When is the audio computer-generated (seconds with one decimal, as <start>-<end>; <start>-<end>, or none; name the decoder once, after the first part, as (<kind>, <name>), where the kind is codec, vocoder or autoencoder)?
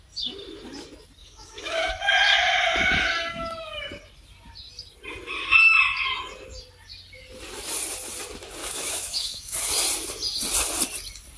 1.2-1.9 (autoencoder, DAC-VAE); 3.3-3.9; 8.6-9.7